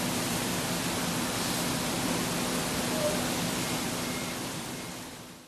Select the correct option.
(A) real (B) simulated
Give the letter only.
B